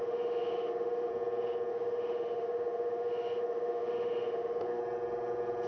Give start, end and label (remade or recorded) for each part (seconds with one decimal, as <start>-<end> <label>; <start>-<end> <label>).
0.0-1.1 remade; 1.1-1.7 recorded; 1.7-4.8 remade; 4.8-5.7 recorded